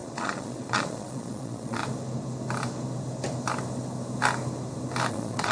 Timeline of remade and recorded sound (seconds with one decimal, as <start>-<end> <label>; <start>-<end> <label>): 0.0-1.8 remade; 1.8-5.1 recorded; 5.1-5.5 remade